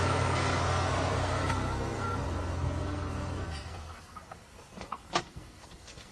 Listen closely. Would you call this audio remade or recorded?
remade